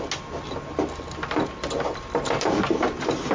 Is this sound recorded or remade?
recorded